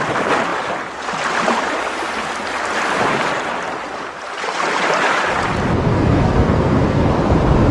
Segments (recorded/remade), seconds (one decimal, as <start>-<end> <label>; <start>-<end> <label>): 0.0-5.9 recorded; 5.9-7.1 remade; 7.1-7.7 recorded